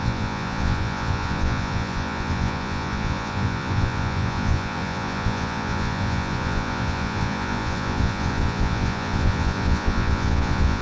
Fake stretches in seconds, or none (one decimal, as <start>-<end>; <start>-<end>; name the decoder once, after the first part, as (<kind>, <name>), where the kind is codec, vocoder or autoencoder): 0.0-10.8 (vocoder, Vocos)